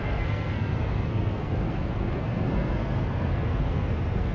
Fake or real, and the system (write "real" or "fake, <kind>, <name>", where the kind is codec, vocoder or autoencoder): fake, codec, SNAC